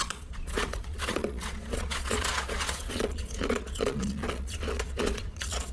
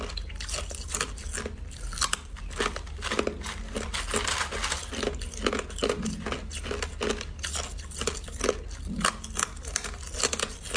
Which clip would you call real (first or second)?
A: second